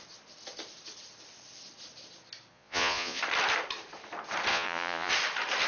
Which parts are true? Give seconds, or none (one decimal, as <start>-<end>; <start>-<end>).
0.0-2.5; 3.2-4.5; 5.1-5.7